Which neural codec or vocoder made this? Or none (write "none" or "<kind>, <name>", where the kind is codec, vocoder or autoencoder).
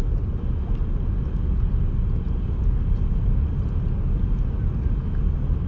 none